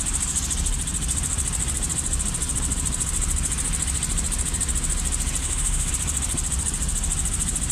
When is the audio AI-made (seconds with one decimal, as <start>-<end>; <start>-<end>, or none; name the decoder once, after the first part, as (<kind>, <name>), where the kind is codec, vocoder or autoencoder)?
5.4-5.9 (autoencoder, DAC-VAE)